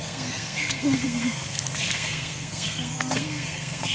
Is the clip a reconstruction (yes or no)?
yes